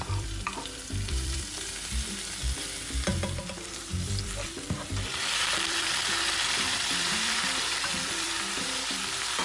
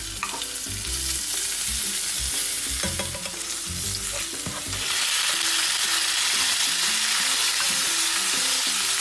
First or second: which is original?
second